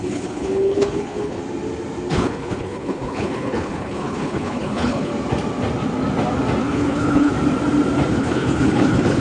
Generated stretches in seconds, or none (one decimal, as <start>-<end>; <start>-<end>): 0.0-1.4; 2.1-5.1; 6.6-7.3; 8.1-9.2